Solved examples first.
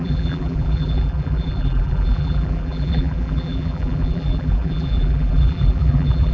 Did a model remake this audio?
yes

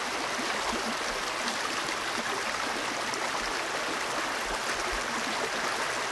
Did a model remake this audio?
no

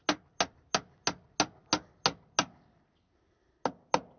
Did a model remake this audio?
no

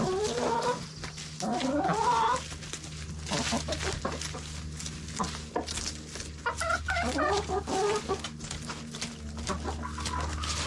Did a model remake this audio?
no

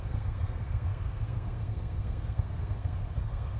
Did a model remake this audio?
yes